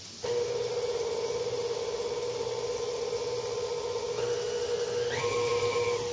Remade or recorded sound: recorded